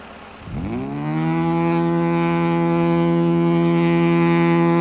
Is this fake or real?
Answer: real